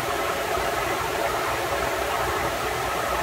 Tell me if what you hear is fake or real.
fake